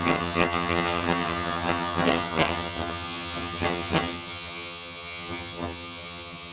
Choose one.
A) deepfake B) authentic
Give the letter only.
A